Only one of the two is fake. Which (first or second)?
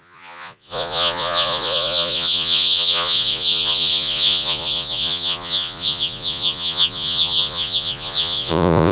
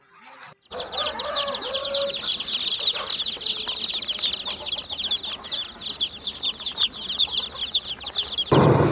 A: first